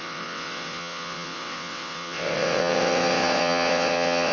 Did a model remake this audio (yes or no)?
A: yes